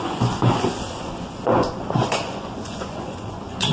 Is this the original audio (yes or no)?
no